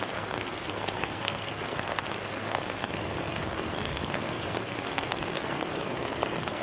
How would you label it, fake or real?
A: fake